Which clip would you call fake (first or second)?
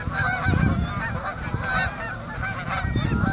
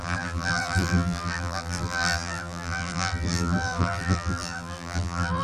second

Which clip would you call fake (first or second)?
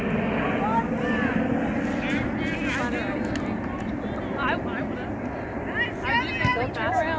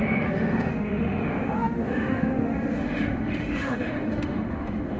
second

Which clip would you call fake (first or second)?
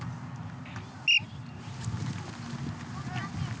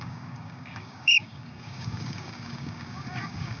second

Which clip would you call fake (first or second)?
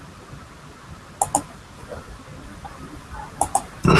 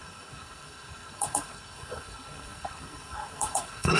second